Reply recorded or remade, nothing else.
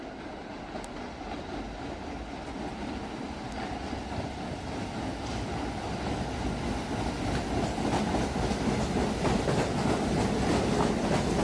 recorded